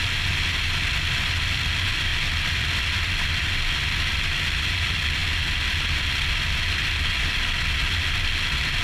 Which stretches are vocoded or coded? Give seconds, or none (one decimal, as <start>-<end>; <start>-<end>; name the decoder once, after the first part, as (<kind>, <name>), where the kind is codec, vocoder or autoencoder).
none